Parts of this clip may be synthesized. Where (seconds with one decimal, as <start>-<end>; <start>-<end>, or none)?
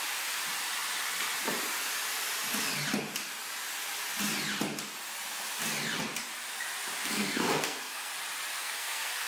7.0-8.1; 8.5-9.3